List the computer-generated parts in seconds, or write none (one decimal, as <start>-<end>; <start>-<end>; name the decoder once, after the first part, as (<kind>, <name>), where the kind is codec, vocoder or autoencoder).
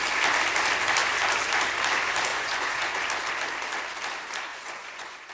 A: 2.3-3.0 (vocoder, Vocos); 4.5-5.3